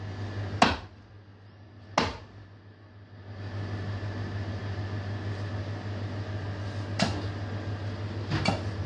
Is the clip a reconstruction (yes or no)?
no